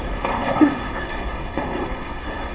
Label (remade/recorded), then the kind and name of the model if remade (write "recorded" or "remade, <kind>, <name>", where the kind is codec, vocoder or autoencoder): remade, codec, SNAC